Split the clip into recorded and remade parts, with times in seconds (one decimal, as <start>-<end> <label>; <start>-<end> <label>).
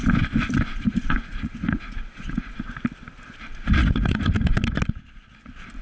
0.0-0.7 recorded; 0.7-2.6 remade; 2.6-3.5 recorded; 3.5-4.6 remade; 4.6-5.8 recorded